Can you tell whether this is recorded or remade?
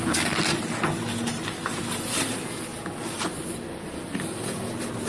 recorded